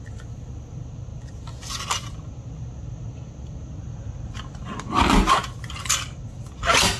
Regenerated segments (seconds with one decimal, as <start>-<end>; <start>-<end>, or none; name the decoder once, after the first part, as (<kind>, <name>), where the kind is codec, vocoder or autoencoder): none